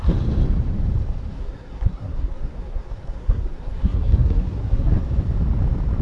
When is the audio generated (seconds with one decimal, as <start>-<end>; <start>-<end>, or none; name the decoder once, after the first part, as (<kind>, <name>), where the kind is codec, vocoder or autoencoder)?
1.3-4.9 (codec, SNAC)